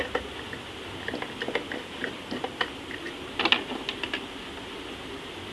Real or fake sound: real